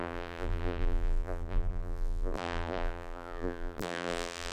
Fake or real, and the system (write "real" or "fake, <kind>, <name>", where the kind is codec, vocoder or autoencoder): fake, vocoder, BigVGAN v2